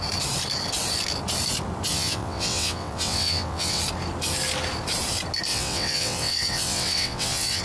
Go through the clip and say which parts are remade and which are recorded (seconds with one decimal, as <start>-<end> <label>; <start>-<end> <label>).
0.0-1.9 recorded; 1.9-3.8 remade; 3.8-5.5 recorded; 5.5-7.6 remade